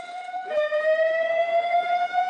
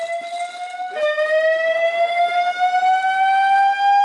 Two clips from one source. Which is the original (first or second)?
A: second